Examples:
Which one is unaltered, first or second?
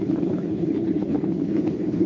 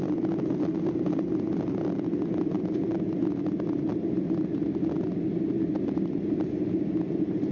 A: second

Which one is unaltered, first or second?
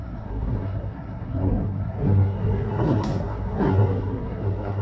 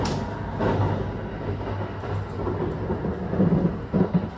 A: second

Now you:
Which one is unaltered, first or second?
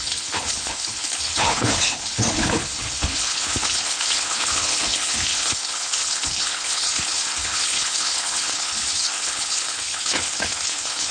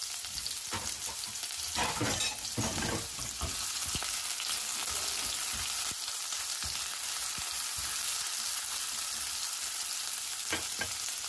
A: second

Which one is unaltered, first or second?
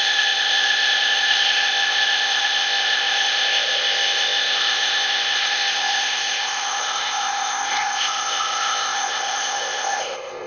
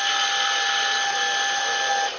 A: second